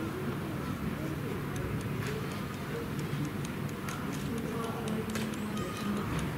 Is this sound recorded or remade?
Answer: recorded